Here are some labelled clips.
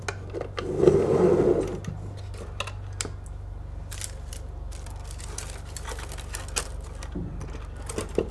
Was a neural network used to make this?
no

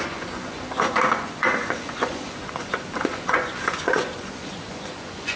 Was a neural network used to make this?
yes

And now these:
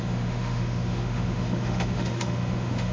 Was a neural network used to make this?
yes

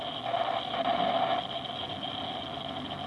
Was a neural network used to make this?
no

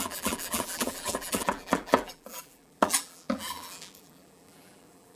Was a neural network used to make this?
yes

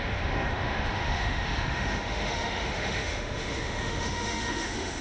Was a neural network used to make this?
yes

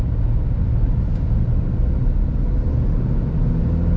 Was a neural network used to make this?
no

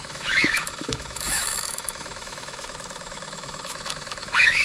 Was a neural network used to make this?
yes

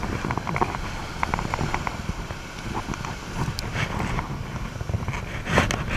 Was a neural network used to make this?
no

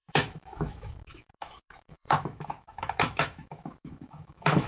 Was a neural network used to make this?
yes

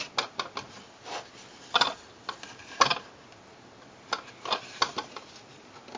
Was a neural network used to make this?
no